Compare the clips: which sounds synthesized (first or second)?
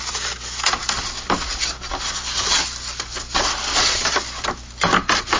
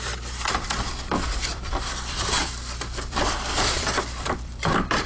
second